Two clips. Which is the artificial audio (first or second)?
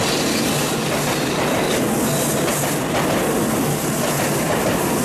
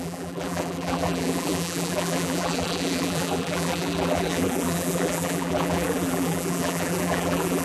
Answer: second